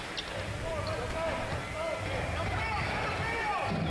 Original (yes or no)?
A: yes